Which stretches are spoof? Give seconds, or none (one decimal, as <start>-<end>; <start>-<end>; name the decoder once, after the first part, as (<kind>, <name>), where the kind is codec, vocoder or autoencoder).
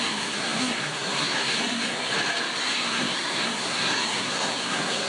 0.0-2.1 (codec, SNAC); 2.6-5.1